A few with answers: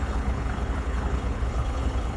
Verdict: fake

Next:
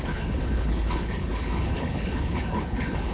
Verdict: fake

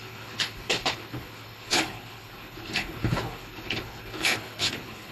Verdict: fake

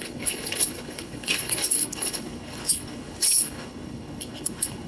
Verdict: fake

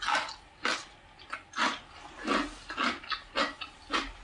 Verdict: real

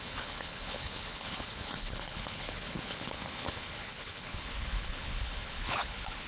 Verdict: fake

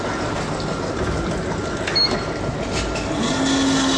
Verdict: real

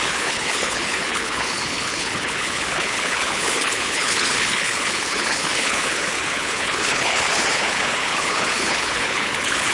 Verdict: fake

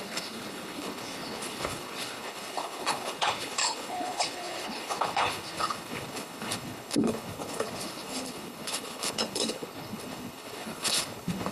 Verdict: fake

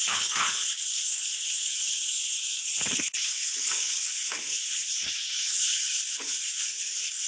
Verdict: fake